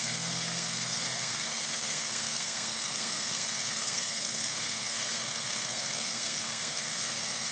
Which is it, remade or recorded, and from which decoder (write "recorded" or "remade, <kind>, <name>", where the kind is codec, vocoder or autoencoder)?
remade, codec, SNAC